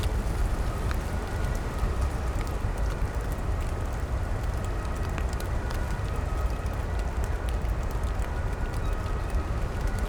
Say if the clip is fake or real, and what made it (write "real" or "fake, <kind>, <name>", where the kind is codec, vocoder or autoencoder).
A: fake, vocoder, BigVGAN v2